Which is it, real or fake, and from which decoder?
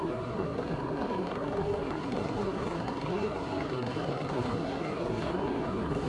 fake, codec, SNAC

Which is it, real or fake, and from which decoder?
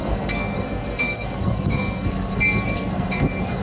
fake, codec, SNAC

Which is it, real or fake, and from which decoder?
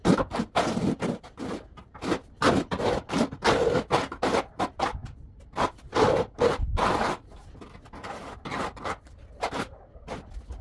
real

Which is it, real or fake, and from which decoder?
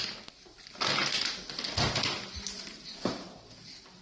real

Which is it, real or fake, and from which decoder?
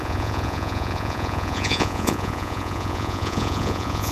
fake, vocoder, Vocos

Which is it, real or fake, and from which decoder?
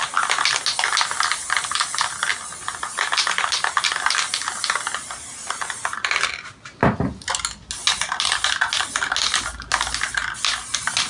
real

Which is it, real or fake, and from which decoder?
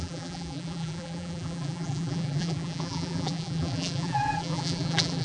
fake, vocoder, BigVGAN v2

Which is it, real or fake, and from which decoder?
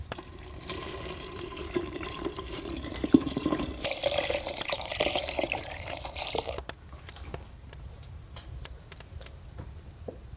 fake, vocoder, BigVGAN v2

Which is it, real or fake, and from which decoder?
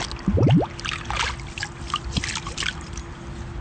real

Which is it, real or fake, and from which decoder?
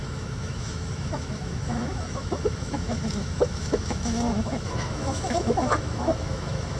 fake, autoencoder, DAC-VAE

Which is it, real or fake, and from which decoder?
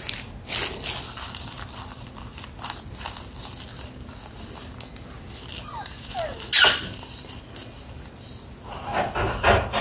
real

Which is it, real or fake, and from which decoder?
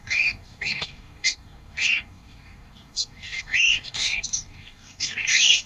fake, codec, DAC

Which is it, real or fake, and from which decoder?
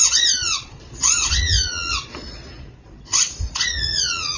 fake, vocoder, Vocos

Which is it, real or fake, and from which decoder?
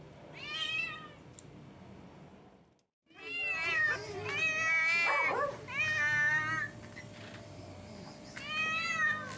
real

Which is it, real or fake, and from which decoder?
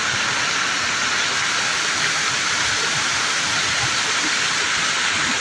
real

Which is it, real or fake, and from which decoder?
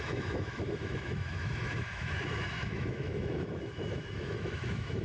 fake, autoencoder, DAC-VAE